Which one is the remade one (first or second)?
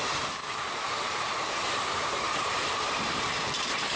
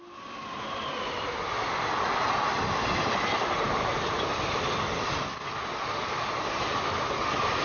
first